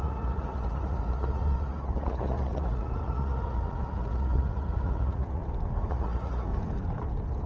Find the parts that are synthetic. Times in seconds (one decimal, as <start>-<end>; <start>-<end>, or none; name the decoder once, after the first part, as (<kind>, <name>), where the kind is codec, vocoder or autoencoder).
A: 0.0-5.4 (vocoder, Vocos); 5.9-6.5